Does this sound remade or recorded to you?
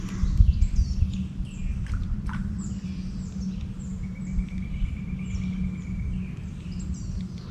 recorded